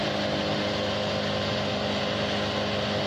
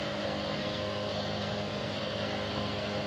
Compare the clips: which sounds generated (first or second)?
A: second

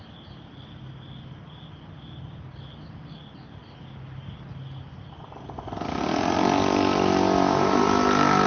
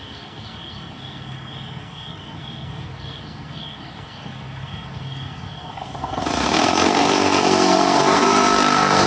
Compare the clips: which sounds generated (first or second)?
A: second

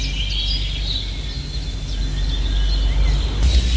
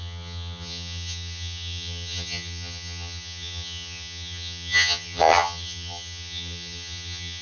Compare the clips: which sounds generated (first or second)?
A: second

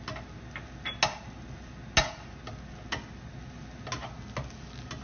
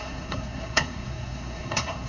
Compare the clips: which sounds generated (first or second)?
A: second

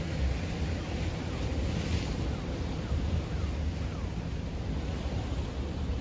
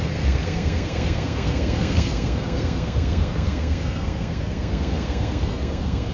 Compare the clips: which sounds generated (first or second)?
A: second